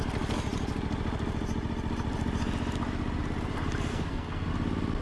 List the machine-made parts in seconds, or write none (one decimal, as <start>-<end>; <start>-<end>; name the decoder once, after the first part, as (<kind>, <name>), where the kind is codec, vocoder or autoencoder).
3.9-4.5 (codec, SNAC)